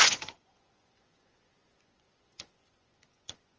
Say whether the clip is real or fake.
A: fake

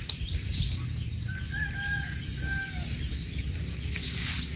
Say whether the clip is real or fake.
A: real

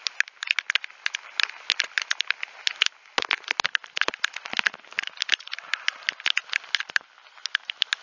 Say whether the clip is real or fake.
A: real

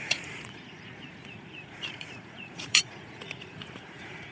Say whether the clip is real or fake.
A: fake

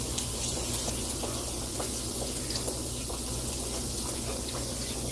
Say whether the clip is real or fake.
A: fake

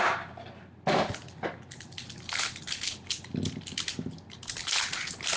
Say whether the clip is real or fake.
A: real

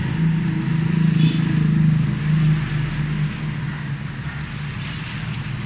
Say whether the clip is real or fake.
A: real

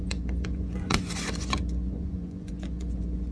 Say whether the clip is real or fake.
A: fake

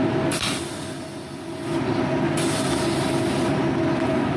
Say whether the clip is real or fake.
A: real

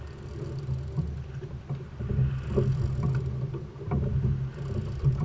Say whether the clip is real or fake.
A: real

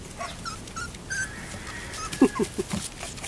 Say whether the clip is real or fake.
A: real